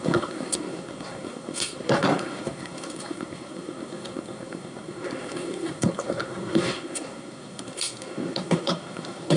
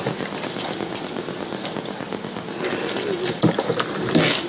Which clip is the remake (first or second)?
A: first